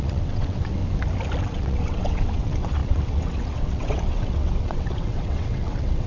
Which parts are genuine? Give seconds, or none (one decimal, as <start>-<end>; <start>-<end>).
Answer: 0.8-1.4